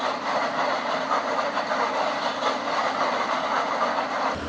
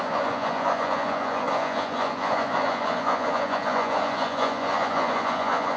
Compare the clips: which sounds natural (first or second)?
first